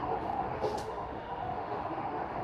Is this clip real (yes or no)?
no